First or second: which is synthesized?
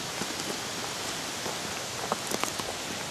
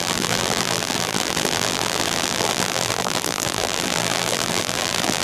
second